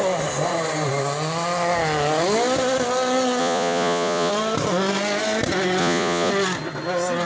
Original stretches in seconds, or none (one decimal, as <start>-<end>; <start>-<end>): 0.0-3.4; 4.3-5.8; 6.3-7.3